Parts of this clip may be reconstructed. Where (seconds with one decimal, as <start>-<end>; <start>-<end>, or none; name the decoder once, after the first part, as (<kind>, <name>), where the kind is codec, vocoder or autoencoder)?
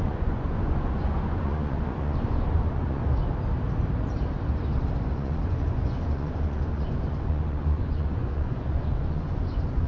0.0-3.0 (vocoder, Vocos); 5.1-9.9